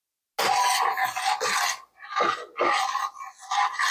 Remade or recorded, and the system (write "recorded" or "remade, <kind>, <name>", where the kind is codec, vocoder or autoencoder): recorded